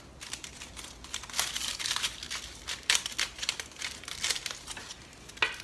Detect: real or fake real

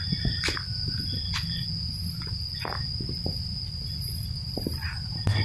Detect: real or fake real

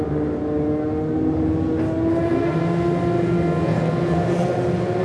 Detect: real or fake real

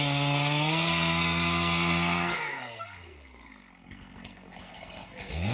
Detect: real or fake fake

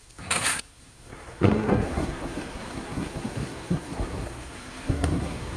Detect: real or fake fake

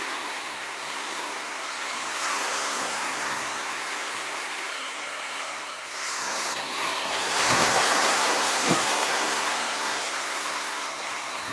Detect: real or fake fake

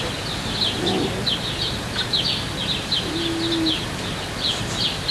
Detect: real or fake real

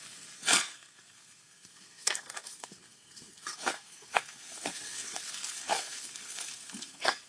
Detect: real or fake fake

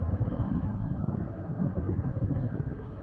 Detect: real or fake fake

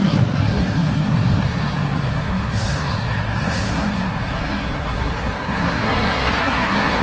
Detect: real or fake fake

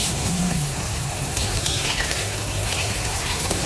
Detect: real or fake fake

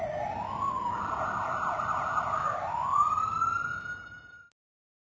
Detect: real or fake real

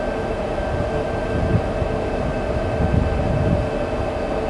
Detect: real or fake real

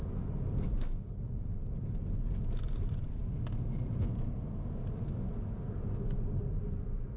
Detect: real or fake real